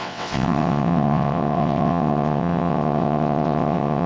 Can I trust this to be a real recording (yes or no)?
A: no